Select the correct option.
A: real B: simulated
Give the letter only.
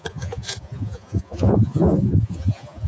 B